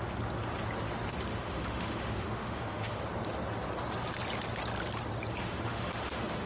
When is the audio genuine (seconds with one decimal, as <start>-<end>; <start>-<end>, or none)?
0.0-1.3; 3.0-5.4